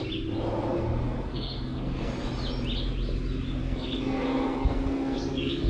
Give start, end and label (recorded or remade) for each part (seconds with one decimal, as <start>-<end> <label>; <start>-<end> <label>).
0.0-0.7 recorded; 0.7-2.1 remade; 2.1-3.6 recorded; 3.6-5.7 remade